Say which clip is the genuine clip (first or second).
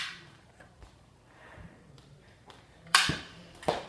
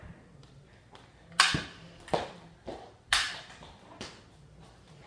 second